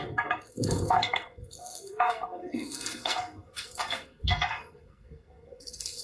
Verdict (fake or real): fake